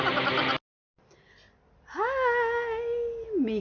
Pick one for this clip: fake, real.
real